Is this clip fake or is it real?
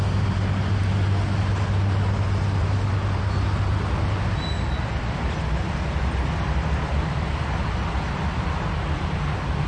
real